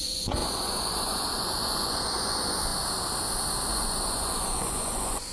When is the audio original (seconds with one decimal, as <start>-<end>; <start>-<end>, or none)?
2.7-3.7